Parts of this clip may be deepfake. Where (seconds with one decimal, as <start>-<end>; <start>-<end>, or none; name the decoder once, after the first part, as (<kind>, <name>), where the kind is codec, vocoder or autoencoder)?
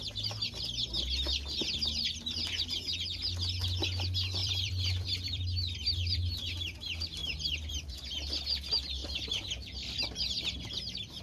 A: 4.4-6.4 (vocoder, BigVGAN v2); 9.0-11.2